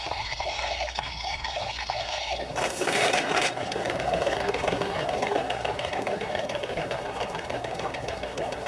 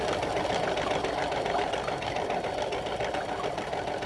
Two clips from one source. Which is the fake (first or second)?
first